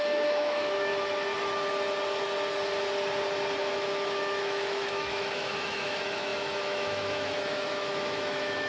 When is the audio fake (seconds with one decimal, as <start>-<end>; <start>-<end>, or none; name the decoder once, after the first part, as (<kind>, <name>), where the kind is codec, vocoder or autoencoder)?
0.0-0.9 (autoencoder, DAC-VAE); 3.6-8.7